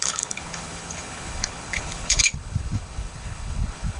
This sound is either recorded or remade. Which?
remade